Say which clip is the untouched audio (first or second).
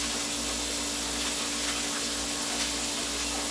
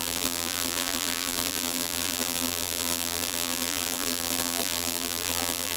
first